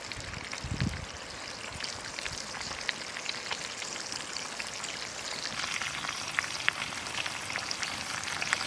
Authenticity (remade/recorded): recorded